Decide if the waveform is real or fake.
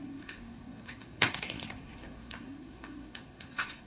fake